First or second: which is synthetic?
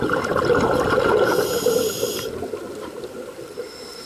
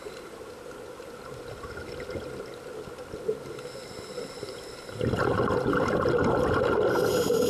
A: first